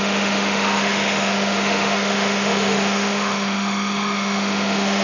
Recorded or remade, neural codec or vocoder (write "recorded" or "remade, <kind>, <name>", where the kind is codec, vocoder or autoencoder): remade, autoencoder, DAC-VAE